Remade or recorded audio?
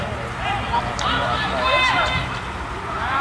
recorded